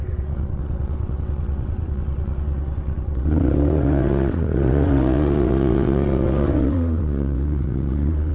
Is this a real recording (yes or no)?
no